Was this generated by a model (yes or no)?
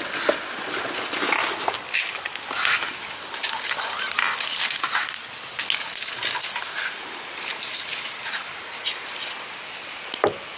no